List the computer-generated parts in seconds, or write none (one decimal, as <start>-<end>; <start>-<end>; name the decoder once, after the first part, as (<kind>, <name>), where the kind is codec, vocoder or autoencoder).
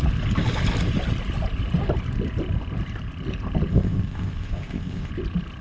3.7-5.1 (codec, ZipCodec)